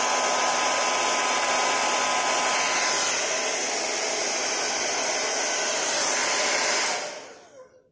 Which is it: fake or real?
real